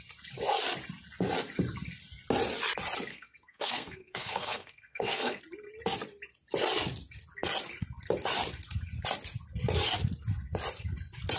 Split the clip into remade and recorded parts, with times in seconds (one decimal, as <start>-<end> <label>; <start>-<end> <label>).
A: 0.0-3.1 recorded; 3.1-5.4 remade; 5.4-11.4 recorded